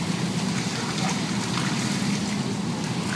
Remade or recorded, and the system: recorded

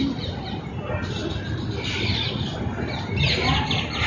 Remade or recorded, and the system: recorded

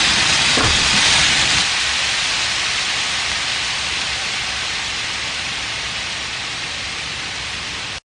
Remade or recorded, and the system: recorded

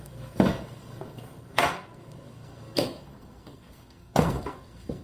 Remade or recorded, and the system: remade, codec, SNAC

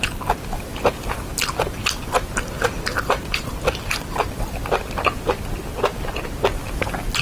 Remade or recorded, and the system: recorded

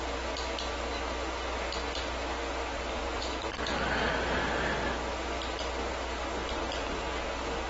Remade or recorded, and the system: recorded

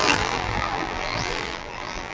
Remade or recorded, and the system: remade, vocoder, BigVGAN v2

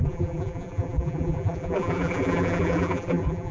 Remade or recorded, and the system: remade, vocoder, BigVGAN v2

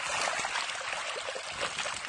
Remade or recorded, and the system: remade, vocoder, BigVGAN v2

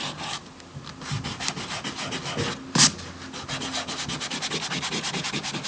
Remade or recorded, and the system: recorded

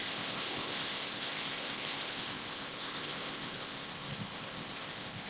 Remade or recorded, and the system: remade, codec, ZipCodec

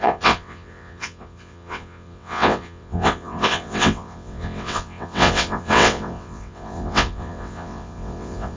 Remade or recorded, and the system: remade, vocoder, WaveNeXt